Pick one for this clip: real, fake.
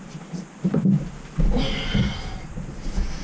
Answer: real